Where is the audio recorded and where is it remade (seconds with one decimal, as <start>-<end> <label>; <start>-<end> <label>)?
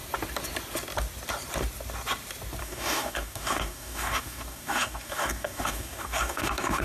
0.0-2.6 recorded; 2.6-6.8 remade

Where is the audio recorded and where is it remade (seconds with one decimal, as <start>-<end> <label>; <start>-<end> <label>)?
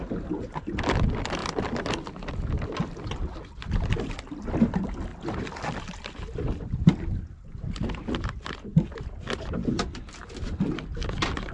0.0-11.5 recorded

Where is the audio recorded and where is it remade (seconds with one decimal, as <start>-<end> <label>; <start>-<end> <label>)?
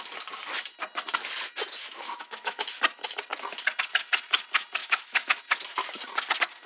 0.0-1.8 recorded; 1.8-2.6 remade; 2.6-4.8 recorded; 4.8-5.4 remade; 5.4-6.7 recorded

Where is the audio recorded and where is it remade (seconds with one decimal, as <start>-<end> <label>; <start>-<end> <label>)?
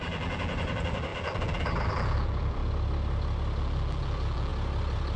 0.0-2.6 remade; 2.6-3.6 recorded; 3.6-4.5 remade; 4.5-5.2 recorded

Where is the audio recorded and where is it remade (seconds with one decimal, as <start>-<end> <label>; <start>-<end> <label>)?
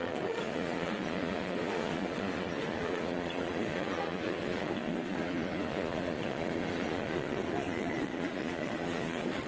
0.0-9.5 remade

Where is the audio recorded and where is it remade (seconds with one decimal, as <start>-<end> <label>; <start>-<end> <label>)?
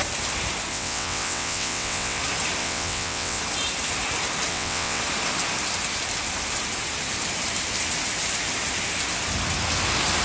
0.0-0.7 recorded; 0.7-2.2 remade; 2.2-2.6 recorded; 2.6-3.4 remade; 3.4-4.5 recorded; 4.5-5.0 remade; 5.0-10.2 recorded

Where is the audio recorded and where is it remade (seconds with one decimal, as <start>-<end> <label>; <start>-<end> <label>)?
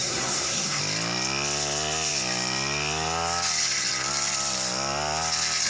0.0-0.8 remade; 0.8-5.7 recorded